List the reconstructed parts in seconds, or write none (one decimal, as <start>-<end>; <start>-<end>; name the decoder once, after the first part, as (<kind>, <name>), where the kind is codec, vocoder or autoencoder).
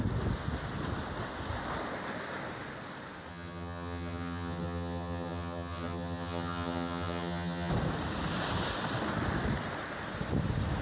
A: 3.3-7.7 (vocoder, HiFi-GAN)